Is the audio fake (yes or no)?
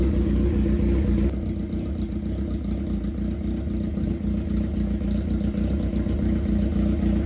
no